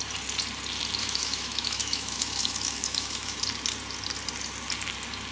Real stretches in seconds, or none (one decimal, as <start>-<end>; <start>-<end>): 0.0-1.0; 3.4-5.3